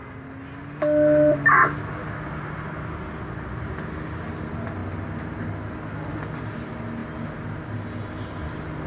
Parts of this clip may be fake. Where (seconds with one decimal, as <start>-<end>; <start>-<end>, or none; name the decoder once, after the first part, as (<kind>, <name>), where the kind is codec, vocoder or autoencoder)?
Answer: none